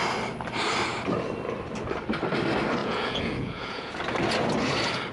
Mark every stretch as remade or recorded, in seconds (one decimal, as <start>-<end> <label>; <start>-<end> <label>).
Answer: 0.0-2.8 recorded; 2.8-3.9 remade; 3.9-5.1 recorded

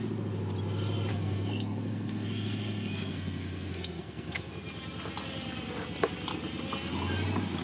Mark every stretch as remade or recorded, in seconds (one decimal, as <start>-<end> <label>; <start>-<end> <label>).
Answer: 0.0-1.1 recorded; 1.1-4.5 remade; 4.5-7.6 recorded

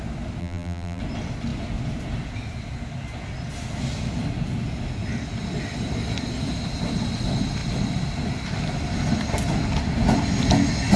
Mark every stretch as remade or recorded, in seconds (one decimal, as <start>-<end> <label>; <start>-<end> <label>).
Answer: 0.0-0.4 recorded; 0.4-1.0 remade; 1.0-11.0 recorded

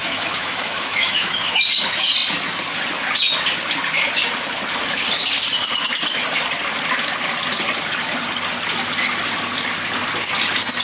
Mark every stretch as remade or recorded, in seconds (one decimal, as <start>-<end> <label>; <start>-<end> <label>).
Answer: 0.0-1.6 remade; 1.6-10.8 recorded

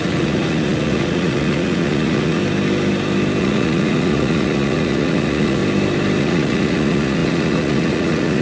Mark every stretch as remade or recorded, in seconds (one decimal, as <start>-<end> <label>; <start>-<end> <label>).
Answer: 0.0-2.4 remade; 2.4-3.4 recorded; 3.4-5.6 remade; 5.6-6.2 recorded; 6.2-8.4 remade